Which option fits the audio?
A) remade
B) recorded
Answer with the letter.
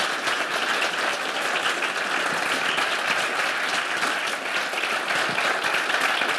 B